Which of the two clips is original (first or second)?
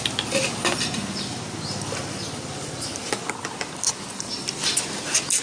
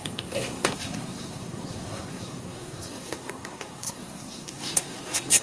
first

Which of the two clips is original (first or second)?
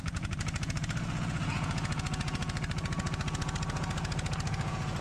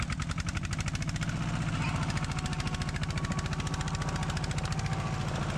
second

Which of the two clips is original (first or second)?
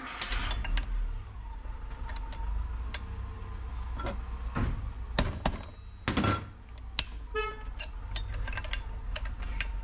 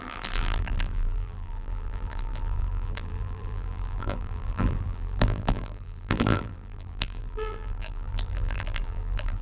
first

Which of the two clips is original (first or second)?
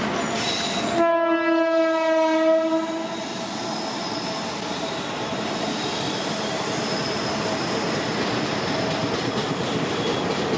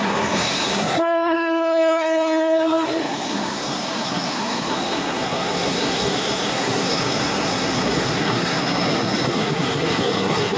first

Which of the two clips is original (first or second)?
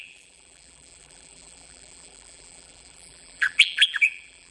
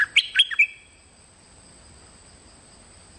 second